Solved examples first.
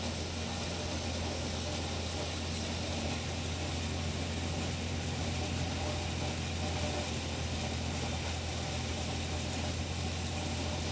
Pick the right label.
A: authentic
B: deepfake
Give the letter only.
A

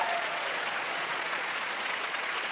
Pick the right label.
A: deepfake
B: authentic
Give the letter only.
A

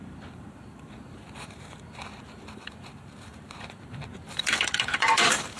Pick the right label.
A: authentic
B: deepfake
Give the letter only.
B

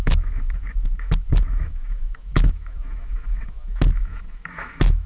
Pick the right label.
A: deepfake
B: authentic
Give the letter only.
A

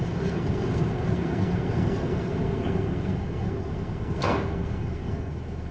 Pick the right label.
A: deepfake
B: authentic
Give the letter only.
A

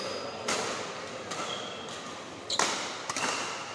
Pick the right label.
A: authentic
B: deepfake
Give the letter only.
A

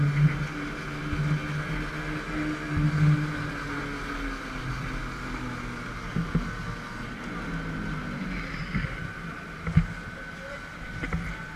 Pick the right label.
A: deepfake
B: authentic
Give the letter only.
B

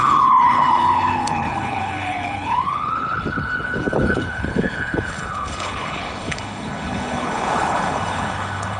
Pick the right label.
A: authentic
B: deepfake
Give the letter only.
B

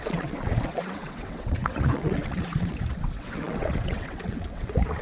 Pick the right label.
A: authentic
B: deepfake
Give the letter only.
B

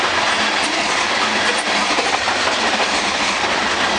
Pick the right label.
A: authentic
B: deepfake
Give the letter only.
A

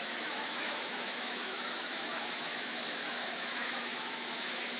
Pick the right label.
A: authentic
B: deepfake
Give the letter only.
B